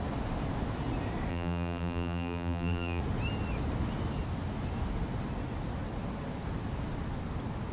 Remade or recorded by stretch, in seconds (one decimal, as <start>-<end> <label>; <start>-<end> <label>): 0.0-1.3 recorded; 1.3-3.0 remade; 3.0-7.7 recorded